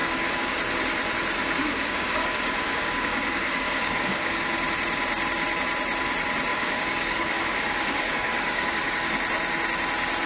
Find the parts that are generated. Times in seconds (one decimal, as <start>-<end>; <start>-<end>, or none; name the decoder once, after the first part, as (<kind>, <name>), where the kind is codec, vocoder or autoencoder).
0.0-0.6 (codec, DAC); 1.4-4.5; 6.5-9.1